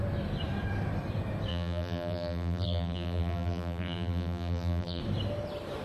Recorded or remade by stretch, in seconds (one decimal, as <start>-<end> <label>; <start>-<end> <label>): 0.0-1.5 recorded; 1.5-5.0 remade; 5.0-5.8 recorded